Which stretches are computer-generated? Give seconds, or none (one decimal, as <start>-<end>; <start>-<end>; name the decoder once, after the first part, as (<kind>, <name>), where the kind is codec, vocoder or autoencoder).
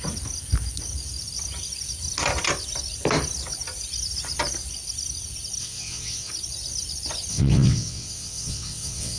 5.6-6.3 (vocoder, WaveNeXt); 7.3-9.2